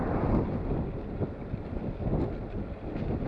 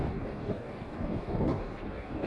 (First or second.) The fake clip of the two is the second